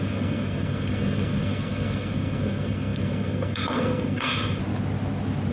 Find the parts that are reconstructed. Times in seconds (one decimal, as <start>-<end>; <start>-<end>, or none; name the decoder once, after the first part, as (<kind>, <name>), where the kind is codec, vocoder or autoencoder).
0.0-4.6 (codec, SNAC)